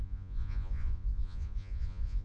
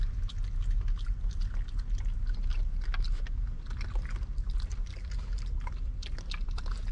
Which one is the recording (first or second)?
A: second